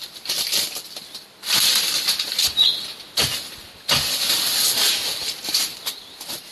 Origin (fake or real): real